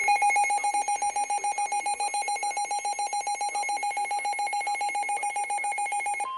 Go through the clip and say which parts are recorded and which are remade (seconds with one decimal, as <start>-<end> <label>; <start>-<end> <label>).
0.0-6.4 recorded